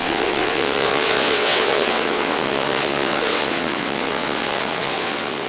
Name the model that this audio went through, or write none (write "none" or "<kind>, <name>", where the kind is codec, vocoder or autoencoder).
vocoder, WaveNeXt